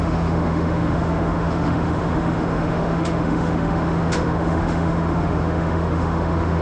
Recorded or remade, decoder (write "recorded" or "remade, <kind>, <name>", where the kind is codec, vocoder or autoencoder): remade, autoencoder, DAC-VAE